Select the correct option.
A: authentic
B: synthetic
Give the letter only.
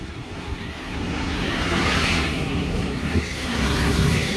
B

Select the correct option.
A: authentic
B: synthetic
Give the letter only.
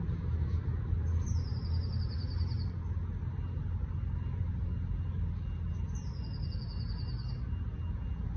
A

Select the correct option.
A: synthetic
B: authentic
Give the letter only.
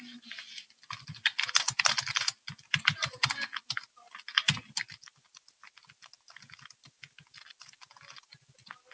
B